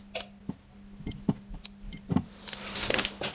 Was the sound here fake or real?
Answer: real